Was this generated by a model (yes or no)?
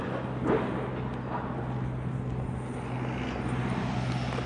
no